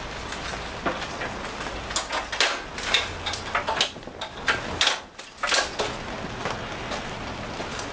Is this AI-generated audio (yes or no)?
no